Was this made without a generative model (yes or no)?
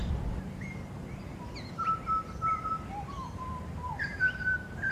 no